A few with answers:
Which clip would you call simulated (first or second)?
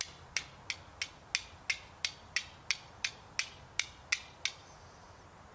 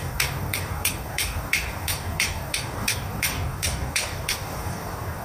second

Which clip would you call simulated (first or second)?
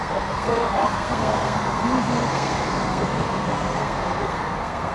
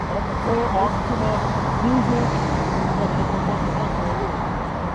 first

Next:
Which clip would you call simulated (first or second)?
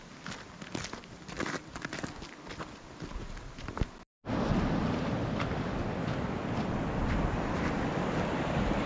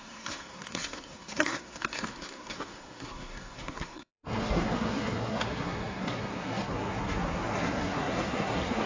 second